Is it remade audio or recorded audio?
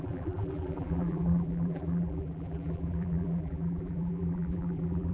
remade